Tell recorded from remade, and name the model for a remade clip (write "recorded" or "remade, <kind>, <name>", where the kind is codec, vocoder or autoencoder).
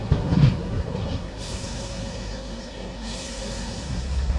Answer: remade, codec, SNAC